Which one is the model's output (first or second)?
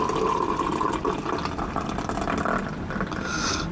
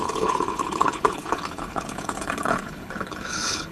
second